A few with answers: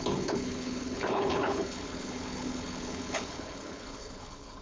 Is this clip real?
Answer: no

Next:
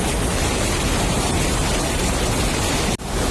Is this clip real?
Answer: yes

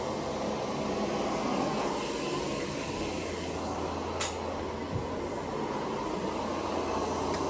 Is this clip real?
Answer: yes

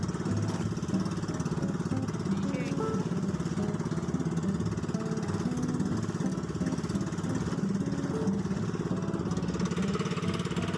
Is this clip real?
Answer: yes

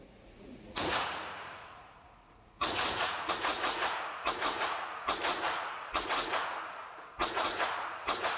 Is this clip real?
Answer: no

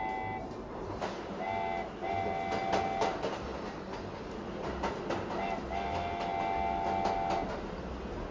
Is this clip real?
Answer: yes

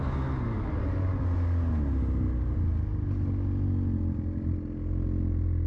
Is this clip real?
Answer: yes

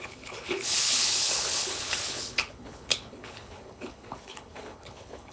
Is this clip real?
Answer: no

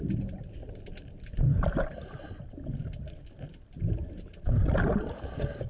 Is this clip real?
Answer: yes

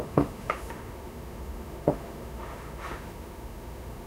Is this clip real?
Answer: no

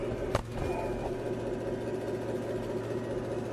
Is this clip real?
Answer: yes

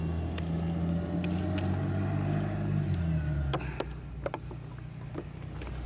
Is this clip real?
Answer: yes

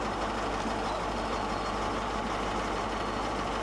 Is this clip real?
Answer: yes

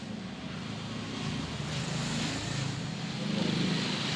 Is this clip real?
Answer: yes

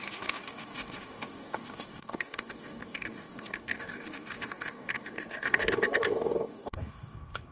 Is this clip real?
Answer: no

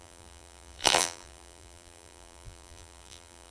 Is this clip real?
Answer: no